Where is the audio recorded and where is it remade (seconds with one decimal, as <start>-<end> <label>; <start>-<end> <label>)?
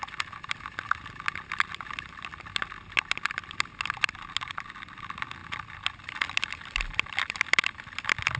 0.0-8.4 recorded